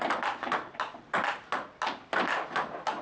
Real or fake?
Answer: real